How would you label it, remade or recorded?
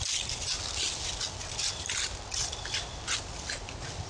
recorded